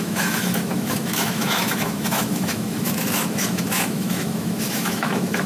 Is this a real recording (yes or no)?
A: no